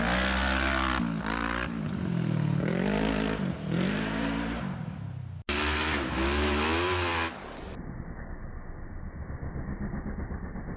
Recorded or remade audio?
recorded